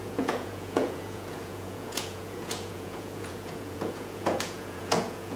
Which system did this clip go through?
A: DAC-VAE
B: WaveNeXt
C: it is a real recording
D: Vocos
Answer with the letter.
D